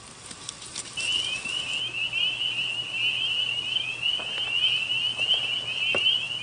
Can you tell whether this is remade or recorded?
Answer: recorded